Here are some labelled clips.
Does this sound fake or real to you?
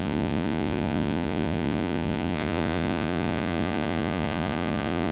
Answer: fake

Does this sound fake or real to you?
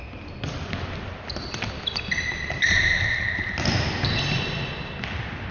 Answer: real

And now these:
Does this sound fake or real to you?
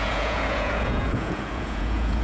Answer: fake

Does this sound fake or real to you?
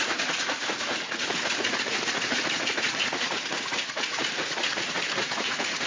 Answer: fake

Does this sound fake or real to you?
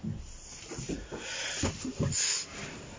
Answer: real